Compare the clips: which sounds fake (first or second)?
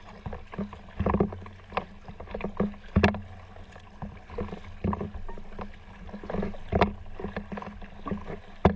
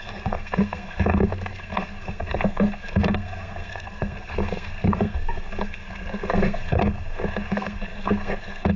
second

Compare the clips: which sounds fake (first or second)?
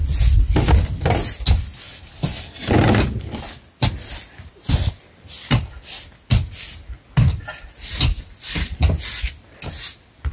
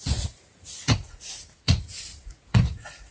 second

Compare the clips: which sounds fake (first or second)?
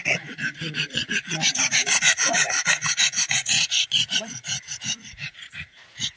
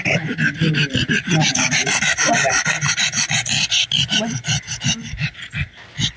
first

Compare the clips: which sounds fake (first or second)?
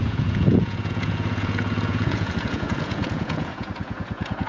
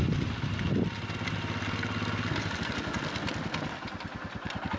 first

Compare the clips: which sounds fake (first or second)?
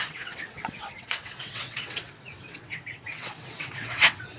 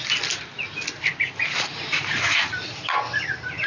first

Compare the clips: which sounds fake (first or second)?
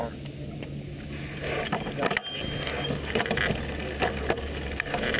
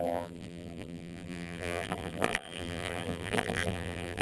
second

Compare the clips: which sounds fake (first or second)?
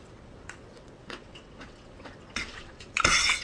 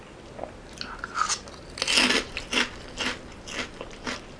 first